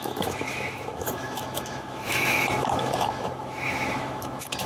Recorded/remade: remade